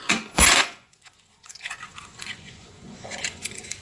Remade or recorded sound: remade